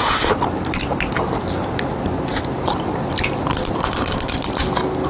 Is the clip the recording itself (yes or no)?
yes